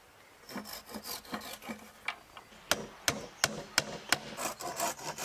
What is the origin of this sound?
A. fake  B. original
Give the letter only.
B